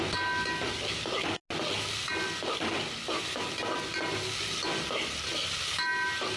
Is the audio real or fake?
real